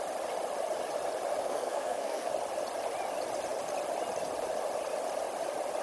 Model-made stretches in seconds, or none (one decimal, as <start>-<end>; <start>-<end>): 1.4-2.3